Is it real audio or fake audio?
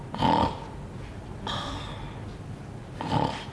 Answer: real